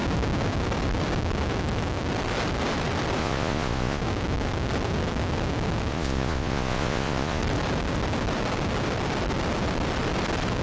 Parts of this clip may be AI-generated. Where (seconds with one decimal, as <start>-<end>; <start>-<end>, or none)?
3.2-4.0; 5.9-7.4